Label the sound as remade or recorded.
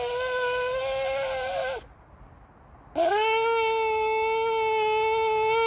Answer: recorded